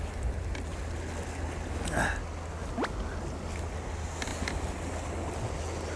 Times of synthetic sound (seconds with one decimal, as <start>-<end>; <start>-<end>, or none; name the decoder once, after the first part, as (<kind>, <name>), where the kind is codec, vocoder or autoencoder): none

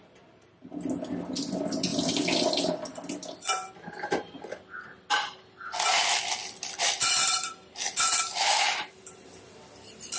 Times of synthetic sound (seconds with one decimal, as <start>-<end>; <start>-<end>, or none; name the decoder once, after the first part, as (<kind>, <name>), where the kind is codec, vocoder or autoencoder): 1.9-3.7 (vocoder, BigVGAN v2); 6.4-9.4

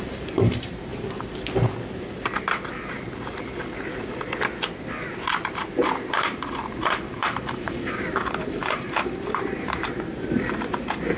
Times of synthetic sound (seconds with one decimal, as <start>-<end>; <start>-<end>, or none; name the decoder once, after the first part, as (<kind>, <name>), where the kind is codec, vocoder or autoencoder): 0.0-0.9 (vocoder, BigVGAN v2); 6.1-11.2

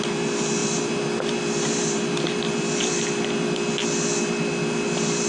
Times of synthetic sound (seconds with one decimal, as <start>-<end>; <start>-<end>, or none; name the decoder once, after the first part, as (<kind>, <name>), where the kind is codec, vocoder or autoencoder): 0.6-3.6 (vocoder, BigVGAN v2)

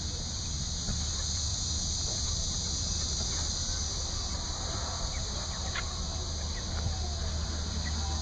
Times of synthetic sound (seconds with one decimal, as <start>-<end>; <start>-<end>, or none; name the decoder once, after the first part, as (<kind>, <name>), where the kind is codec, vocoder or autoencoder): 1.5-5.7 (vocoder, BigVGAN v2)

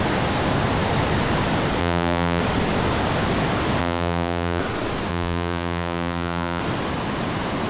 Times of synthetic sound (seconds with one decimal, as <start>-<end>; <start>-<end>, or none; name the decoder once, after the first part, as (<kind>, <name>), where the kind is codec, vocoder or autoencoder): 1.8-2.4 (vocoder, BigVGAN v2); 3.8-4.6; 5.1-6.6

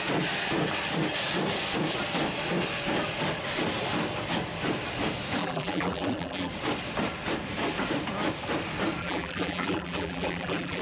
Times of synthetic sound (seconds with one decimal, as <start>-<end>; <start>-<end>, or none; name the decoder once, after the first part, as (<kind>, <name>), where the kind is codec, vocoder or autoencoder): 5.4-6.5 (vocoder, BigVGAN v2); 9.0-10.8

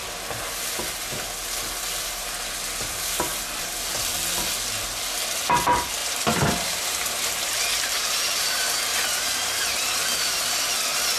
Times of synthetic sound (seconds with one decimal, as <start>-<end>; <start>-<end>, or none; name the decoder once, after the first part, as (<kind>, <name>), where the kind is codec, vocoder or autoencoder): 6.0-10.5 (vocoder, BigVGAN v2)